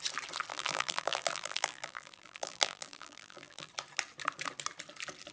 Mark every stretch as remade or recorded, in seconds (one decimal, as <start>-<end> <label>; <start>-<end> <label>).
0.0-0.5 recorded; 0.5-3.7 remade; 3.7-5.3 recorded